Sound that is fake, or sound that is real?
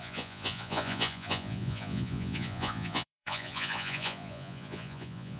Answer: fake